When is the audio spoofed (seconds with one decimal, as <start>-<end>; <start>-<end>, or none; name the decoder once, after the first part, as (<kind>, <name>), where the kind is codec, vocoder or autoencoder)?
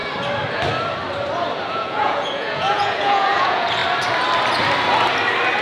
1.7-3.8 (vocoder, Vocos)